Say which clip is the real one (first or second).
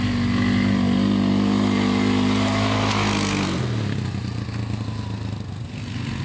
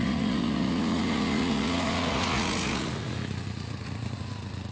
first